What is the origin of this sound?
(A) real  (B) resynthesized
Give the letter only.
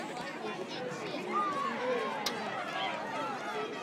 A